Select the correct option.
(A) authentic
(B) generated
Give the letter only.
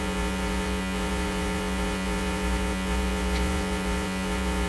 B